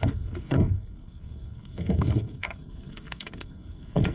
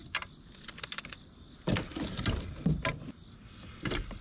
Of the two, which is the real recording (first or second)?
second